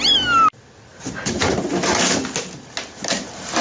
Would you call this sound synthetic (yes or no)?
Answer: no